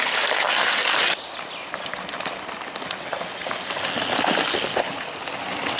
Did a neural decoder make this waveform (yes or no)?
no